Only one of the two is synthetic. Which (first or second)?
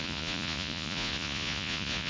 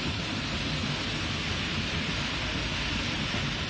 first